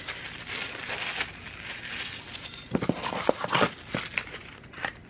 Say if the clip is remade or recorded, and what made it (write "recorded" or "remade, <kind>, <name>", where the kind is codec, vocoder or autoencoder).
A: recorded